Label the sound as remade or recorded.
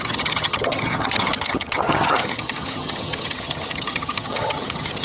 remade